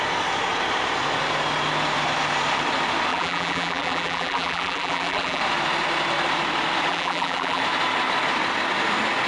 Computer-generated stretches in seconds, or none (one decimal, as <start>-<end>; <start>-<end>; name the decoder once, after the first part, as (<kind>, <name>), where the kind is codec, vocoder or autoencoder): 3.1-5.4 (vocoder, BigVGAN v2); 6.9-7.6